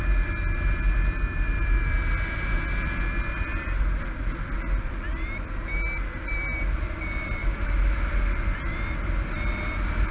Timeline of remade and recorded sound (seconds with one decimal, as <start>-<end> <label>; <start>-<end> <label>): 0.0-7.4 recorded; 7.4-8.0 remade; 8.0-10.1 recorded